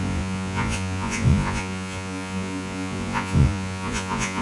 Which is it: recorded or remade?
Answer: remade